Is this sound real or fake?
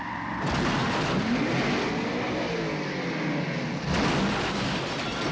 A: real